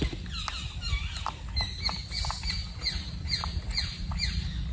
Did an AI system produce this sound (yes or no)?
no